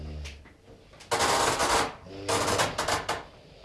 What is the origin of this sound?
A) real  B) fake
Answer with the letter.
A